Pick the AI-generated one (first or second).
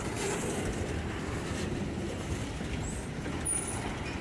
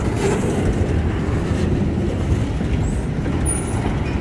first